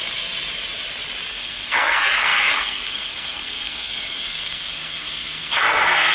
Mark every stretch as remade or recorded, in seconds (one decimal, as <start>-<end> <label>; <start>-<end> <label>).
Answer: 0.0-1.3 recorded; 1.3-6.1 remade